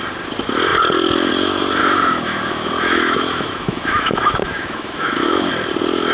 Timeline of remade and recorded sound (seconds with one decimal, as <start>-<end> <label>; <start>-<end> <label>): 0.0-1.8 recorded; 1.8-5.5 remade; 5.5-6.1 recorded

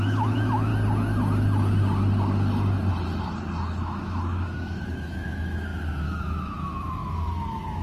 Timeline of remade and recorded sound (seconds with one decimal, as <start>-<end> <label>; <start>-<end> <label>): 0.0-0.7 remade; 0.7-3.8 recorded; 3.8-7.8 remade